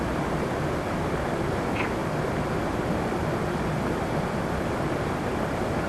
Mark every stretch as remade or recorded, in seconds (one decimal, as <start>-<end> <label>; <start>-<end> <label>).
0.0-5.9 recorded